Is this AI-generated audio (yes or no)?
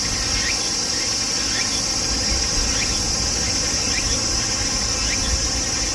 no